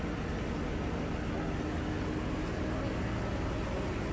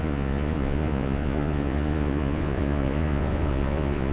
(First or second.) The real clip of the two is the first